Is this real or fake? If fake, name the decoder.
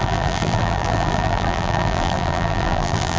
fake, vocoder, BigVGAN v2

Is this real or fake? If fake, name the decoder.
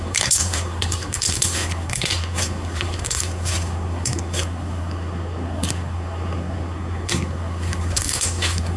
fake, codec, SNAC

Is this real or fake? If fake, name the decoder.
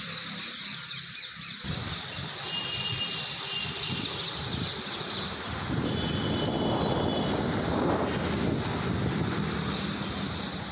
real